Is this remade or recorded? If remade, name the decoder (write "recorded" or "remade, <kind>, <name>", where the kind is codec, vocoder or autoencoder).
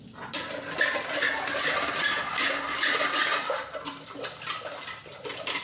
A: recorded